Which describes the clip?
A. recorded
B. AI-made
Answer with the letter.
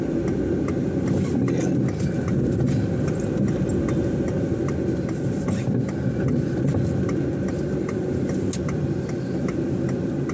A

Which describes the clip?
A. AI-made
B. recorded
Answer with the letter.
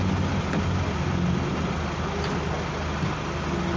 B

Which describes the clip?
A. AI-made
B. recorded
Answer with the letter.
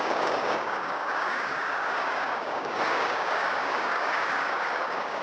A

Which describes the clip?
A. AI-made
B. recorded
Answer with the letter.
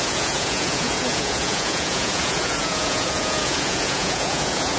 A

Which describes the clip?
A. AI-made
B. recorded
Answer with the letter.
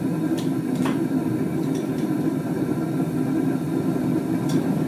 A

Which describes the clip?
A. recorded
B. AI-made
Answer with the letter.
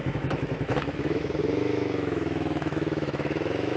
B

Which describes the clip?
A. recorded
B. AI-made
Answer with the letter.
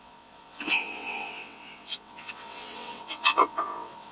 B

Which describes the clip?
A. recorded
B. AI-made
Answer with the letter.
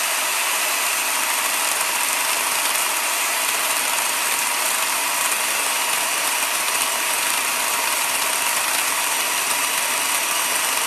B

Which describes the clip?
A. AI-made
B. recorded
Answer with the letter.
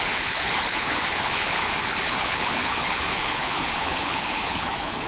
A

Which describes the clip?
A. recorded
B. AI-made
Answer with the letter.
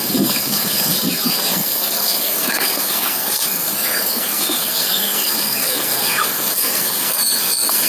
B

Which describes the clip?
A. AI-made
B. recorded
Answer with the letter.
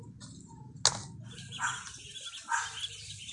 B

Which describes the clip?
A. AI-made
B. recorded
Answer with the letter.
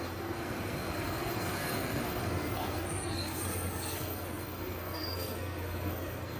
A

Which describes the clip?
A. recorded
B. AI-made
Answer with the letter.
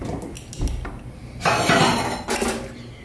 A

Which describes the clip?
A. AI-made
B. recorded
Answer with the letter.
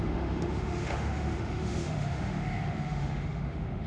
A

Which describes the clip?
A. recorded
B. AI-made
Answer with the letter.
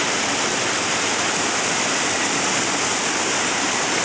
A